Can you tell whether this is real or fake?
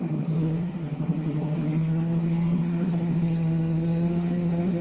fake